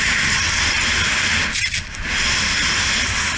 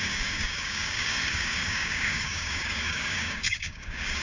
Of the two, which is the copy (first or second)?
second